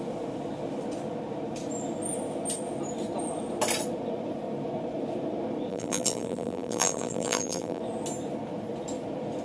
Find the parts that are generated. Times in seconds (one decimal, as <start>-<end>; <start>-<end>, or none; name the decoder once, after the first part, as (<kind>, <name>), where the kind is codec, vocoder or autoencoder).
5.7-7.8 (vocoder, BigVGAN v2)